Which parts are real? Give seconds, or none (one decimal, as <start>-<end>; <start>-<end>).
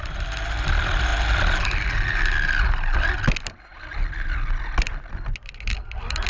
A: 0.0-6.3